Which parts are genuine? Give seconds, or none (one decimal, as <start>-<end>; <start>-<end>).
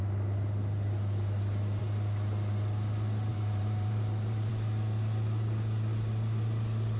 0.0-3.3; 4.5-7.0